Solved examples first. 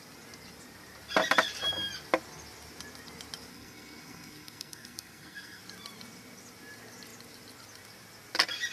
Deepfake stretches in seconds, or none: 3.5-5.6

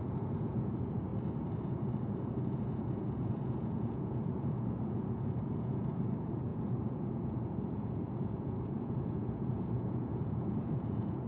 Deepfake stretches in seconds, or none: 0.0-1.1; 1.6-11.3

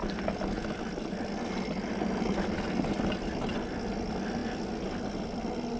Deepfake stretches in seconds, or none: none